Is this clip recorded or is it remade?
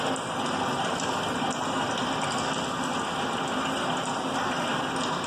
recorded